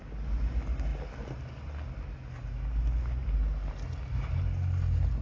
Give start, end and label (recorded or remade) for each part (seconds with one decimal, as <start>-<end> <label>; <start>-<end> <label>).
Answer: 0.0-5.2 recorded